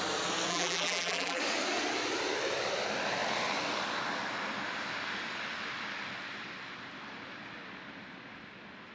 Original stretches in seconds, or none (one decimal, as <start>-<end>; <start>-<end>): 0.0-0.5; 1.4-8.9